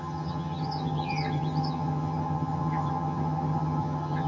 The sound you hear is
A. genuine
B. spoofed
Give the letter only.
B